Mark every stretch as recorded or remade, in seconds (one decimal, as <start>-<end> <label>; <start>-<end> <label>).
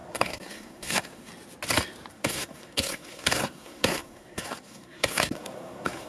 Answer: 0.0-1.3 remade; 1.3-2.1 recorded; 2.1-6.1 remade